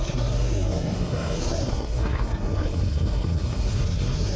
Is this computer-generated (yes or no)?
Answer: yes